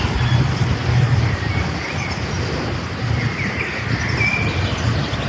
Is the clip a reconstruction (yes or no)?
no